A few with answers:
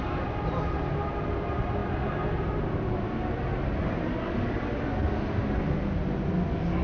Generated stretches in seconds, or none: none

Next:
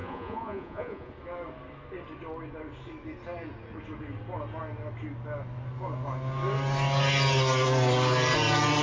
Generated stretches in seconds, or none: 0.0-1.1 (vocoder, Vocos)

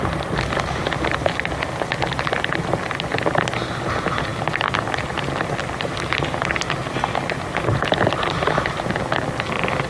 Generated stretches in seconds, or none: none